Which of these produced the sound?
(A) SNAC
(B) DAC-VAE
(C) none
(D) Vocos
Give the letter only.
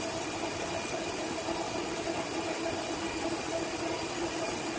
C